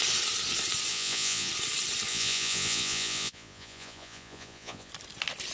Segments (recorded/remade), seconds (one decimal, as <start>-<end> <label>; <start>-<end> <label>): 0.0-0.9 recorded; 0.9-1.5 remade; 1.5-2.1 recorded; 2.1-4.9 remade; 4.9-5.5 recorded